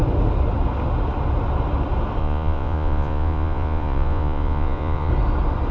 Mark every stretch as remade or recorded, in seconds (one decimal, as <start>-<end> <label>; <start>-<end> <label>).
0.0-2.2 recorded; 2.2-5.1 remade; 5.1-5.7 recorded